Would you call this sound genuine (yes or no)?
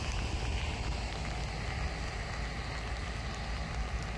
yes